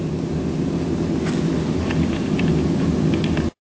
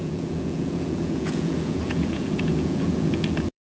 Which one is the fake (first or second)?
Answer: second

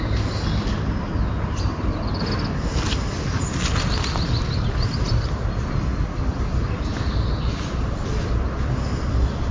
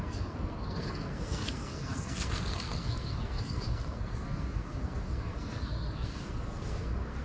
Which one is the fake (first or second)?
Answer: second